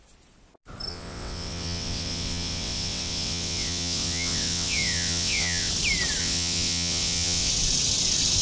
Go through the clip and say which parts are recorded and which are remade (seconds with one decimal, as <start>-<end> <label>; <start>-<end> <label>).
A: 0.0-0.9 recorded; 0.9-5.7 remade; 5.7-6.2 recorded; 6.2-7.5 remade; 7.5-8.4 recorded

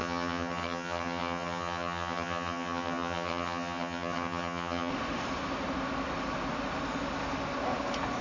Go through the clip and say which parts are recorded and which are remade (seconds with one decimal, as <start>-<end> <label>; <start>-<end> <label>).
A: 0.0-4.9 remade; 4.9-8.2 recorded

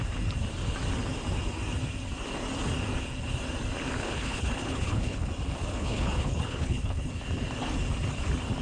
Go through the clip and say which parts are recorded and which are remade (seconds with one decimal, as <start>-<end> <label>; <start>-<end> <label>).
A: 0.0-4.0 recorded; 4.0-5.3 remade; 5.3-5.7 recorded; 5.7-7.1 remade; 7.1-8.6 recorded

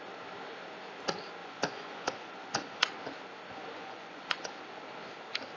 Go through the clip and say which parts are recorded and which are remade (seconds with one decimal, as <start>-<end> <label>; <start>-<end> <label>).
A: 0.0-1.4 recorded; 1.4-2.9 remade; 2.9-3.8 recorded; 3.8-4.5 remade; 4.5-5.6 recorded

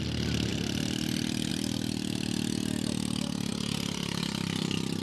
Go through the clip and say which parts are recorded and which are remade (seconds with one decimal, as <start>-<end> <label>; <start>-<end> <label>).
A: 0.0-5.0 recorded